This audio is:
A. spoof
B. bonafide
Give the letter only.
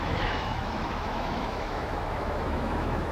A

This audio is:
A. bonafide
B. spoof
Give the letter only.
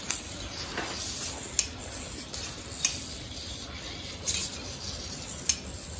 A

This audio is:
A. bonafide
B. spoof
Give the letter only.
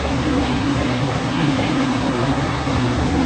B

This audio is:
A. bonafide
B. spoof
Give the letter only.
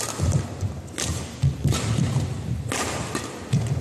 A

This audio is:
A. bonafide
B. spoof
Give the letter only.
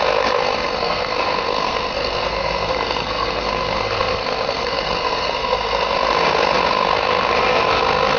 B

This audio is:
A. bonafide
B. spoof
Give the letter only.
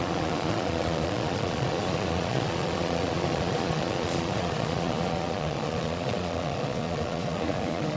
B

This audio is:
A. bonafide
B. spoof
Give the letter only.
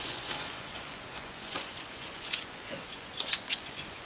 B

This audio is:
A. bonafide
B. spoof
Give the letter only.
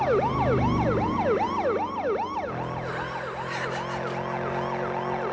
A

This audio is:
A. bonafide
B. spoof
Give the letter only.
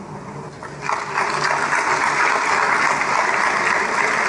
A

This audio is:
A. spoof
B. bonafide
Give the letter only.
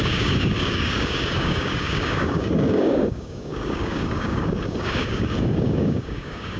A